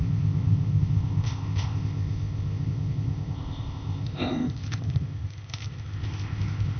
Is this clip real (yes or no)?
no